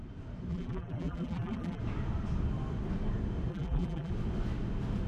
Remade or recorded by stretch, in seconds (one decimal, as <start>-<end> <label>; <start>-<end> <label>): 0.0-0.5 recorded; 0.5-1.8 remade; 1.8-3.5 recorded; 3.5-4.1 remade; 4.1-5.1 recorded